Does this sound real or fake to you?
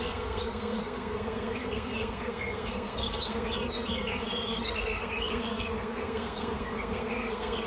fake